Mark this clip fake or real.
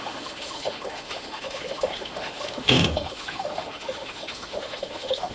fake